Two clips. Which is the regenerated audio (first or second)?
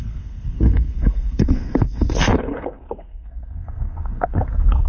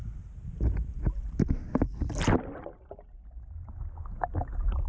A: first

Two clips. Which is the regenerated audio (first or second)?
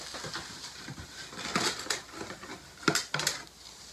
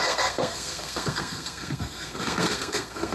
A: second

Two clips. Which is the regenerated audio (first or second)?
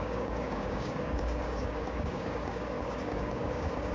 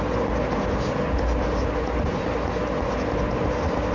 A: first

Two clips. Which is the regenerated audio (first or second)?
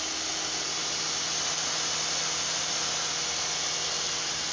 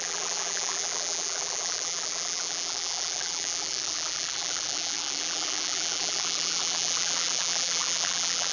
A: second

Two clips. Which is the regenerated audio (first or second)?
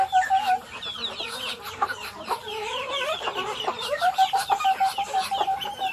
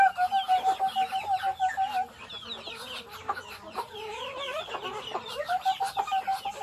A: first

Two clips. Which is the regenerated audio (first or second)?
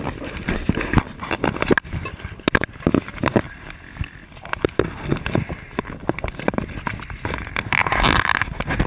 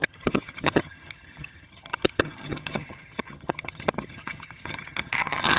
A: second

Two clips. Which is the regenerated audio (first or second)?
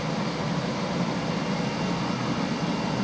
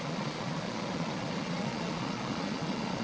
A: second